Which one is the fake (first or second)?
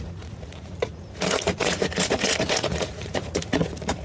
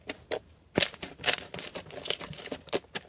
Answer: first